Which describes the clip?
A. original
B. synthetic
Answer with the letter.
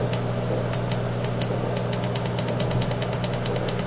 A